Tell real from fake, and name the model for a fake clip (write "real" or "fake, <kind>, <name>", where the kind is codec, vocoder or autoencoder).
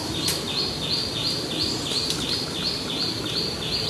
real